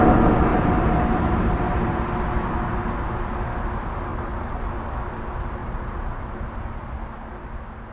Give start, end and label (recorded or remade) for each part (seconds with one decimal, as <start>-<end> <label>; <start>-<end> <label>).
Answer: 0.0-0.5 recorded; 0.5-2.0 remade; 2.0-4.1 recorded; 4.1-4.6 remade; 4.6-5.6 recorded; 5.6-6.6 remade; 6.6-7.9 recorded